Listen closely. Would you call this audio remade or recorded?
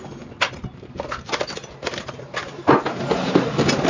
recorded